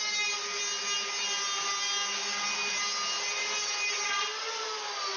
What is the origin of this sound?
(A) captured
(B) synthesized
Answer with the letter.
A